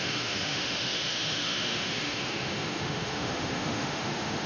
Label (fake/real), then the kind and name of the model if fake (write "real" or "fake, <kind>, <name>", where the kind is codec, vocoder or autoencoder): fake, autoencoder, DAC-VAE